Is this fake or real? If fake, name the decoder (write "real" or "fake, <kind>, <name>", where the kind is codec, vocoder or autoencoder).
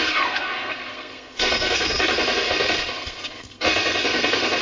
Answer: fake, codec, SNAC